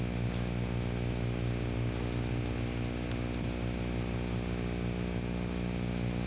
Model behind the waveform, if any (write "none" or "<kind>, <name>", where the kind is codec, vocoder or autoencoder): none